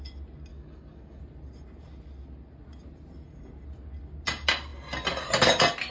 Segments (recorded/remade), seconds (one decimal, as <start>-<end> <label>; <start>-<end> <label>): 0.0-0.5 recorded; 0.5-1.2 remade; 1.2-5.9 recorded